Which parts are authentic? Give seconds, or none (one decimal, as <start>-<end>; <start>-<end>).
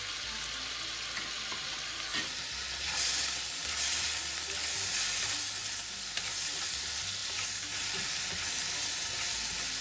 0.0-2.1; 4.2-5.6; 6.7-9.8